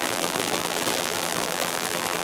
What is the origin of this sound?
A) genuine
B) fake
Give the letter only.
B